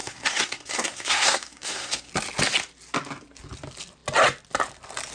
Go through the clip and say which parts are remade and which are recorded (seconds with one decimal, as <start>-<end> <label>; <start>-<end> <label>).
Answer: 0.0-2.1 remade; 2.1-5.1 recorded